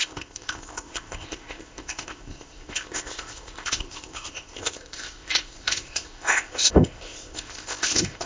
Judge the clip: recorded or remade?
remade